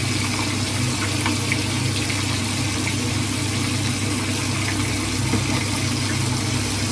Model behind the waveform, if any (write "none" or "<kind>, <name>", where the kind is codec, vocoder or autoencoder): none